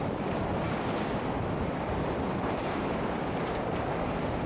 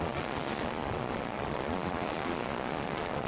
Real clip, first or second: first